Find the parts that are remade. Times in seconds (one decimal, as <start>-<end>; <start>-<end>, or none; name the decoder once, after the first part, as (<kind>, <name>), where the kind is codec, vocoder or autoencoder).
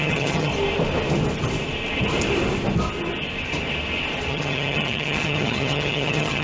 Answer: 0.0-0.5 (vocoder, HiFi-GAN); 4.3-6.4